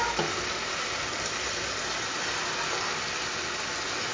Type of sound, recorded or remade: recorded